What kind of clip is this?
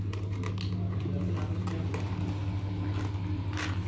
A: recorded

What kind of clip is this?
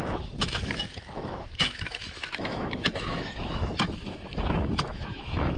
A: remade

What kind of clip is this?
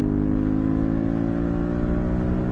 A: recorded